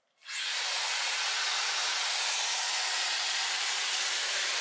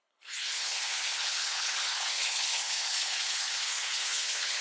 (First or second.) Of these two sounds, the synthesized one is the second